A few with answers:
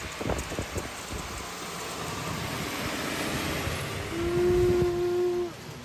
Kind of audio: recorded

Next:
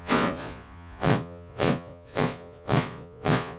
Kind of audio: remade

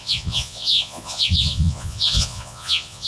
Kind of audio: remade